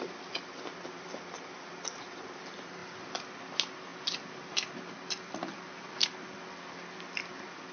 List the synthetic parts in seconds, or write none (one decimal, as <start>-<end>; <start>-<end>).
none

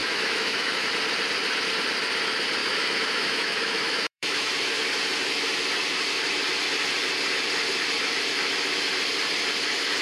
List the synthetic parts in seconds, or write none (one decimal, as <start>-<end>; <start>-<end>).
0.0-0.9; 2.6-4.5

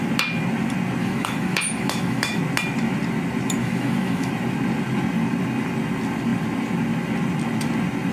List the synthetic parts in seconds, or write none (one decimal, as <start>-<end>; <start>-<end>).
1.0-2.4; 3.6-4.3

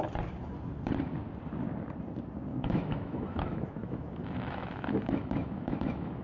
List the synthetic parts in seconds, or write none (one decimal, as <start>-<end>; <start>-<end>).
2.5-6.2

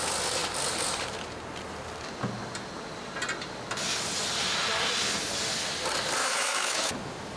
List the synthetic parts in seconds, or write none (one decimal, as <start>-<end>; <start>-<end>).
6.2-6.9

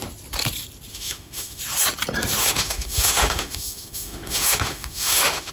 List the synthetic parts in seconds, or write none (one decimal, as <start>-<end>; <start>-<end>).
0.9-1.6; 2.4-5.5

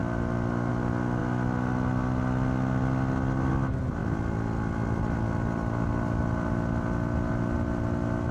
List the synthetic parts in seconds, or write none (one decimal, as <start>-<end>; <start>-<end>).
none